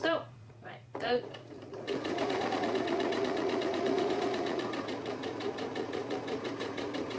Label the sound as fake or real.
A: fake